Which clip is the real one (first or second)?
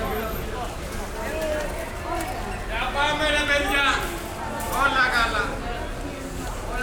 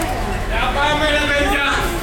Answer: first